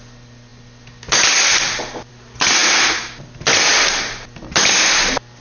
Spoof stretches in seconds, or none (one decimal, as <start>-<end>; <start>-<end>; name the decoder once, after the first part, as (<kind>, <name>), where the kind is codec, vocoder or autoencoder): none